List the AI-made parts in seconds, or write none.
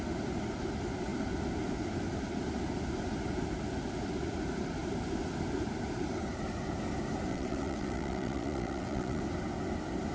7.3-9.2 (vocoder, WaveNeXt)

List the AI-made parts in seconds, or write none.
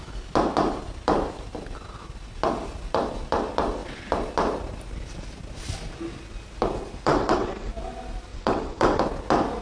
7.1-7.7 (vocoder, WaveNeXt); 8.3-9.0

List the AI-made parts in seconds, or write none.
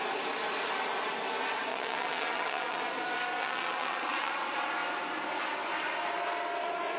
1.7-2.8 (vocoder, WaveNeXt); 3.4-4.3